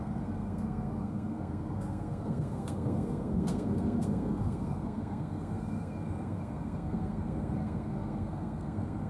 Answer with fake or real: fake